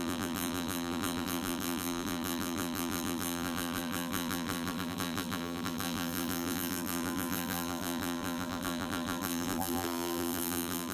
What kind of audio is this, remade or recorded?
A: remade